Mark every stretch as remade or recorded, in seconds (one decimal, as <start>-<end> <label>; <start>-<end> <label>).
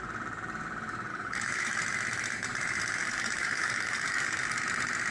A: 0.0-1.1 recorded; 1.1-1.8 remade; 1.8-3.0 recorded; 3.0-4.6 remade; 4.6-5.1 recorded